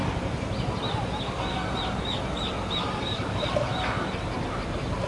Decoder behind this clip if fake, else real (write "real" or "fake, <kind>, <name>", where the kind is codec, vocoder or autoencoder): real